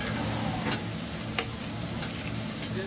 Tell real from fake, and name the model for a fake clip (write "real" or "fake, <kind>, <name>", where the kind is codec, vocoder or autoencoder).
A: real